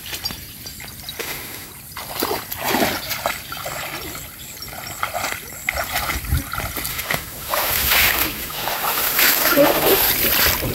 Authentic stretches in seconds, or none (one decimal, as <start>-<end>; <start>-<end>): 0.0-1.2; 1.7-6.9; 10.1-10.7